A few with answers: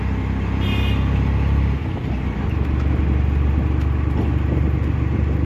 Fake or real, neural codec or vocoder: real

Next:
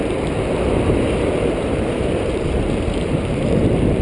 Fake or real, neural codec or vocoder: fake, vocoder, BigVGAN v2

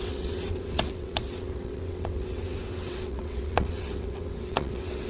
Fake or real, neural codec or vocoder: fake, vocoder, WaveNeXt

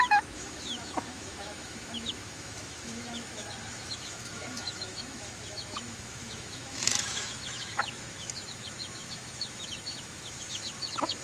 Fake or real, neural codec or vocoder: fake, autoencoder, DAC-VAE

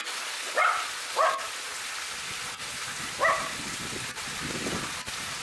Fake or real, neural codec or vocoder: real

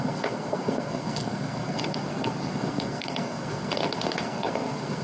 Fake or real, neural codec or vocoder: fake, codec, SNAC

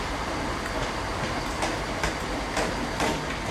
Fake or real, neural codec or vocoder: real